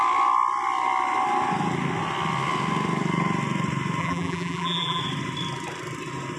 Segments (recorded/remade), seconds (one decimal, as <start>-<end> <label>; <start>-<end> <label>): 0.0-4.0 recorded; 4.0-5.0 remade; 5.0-6.4 recorded